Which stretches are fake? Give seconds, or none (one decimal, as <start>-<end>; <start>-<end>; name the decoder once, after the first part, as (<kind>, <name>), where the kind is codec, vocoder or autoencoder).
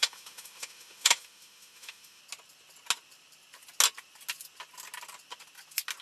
0.0-2.2 (autoencoder, DAC-VAE)